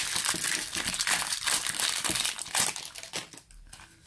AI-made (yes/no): no